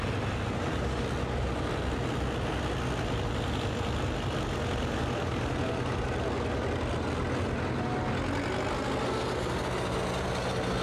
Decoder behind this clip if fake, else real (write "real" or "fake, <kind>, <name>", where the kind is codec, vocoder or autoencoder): real